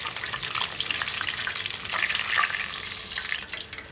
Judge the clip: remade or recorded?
recorded